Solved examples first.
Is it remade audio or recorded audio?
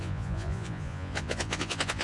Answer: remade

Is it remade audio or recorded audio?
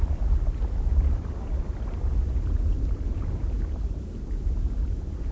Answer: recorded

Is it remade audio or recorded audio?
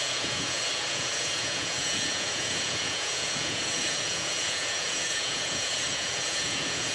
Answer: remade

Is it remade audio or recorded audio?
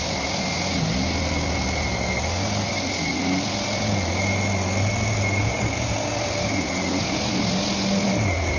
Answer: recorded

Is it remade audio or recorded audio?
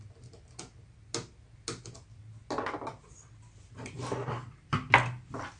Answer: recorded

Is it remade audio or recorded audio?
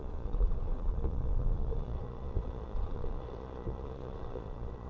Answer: remade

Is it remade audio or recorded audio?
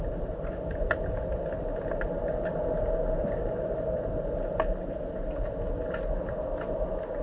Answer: recorded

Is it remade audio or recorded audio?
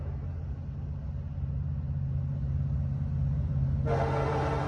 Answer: recorded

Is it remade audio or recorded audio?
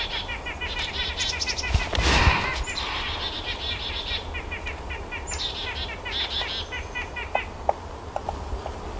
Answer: recorded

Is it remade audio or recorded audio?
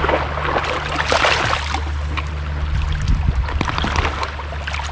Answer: recorded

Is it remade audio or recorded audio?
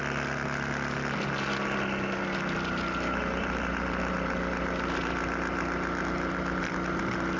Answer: recorded